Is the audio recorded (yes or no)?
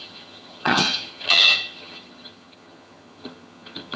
no